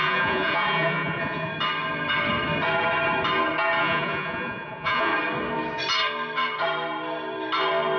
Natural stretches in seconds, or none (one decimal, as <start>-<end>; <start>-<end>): 1.5-3.8; 5.1-8.0